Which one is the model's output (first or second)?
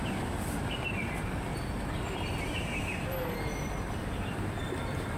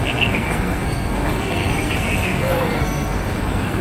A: second